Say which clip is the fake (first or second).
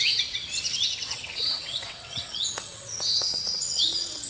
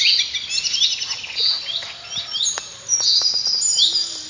first